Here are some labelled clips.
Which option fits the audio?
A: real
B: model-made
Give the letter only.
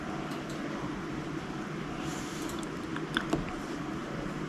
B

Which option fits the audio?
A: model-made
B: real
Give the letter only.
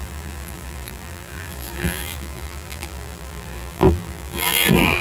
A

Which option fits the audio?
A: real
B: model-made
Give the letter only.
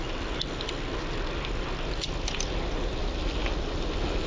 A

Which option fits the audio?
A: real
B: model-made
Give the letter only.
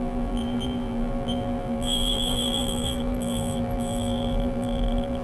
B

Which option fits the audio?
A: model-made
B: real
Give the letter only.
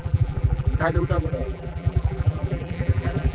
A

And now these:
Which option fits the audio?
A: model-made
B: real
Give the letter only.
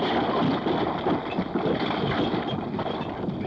B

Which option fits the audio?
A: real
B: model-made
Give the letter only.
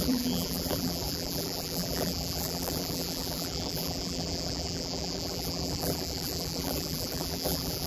B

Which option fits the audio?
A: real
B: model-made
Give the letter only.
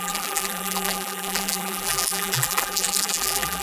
B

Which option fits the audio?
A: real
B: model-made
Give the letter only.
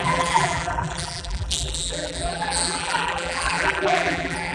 B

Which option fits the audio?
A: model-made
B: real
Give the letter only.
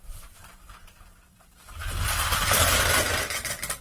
A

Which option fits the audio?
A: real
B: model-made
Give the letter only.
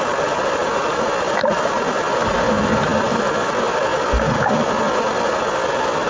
B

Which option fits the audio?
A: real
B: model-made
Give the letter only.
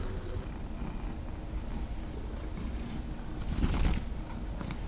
A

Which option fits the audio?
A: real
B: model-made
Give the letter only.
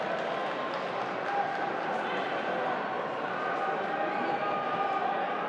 A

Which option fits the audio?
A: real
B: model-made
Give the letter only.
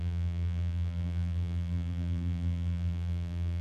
B